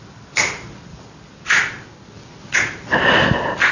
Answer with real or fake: real